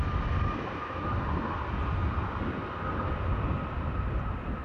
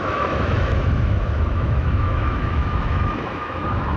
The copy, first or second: second